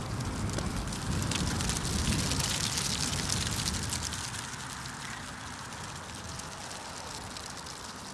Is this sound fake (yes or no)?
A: no